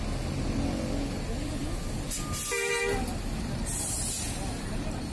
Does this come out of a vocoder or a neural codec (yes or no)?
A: no